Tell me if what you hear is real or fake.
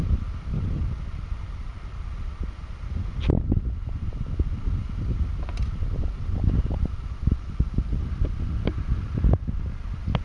real